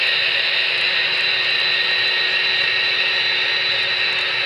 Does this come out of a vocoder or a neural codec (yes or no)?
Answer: no